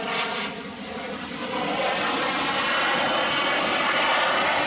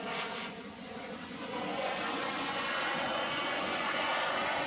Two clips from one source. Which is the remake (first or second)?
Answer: second